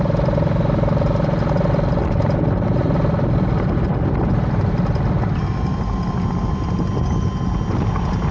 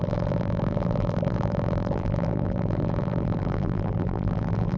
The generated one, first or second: second